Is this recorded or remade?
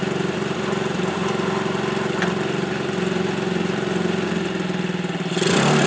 recorded